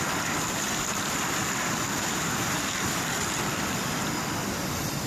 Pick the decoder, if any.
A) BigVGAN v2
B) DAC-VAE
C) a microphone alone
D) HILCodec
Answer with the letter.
A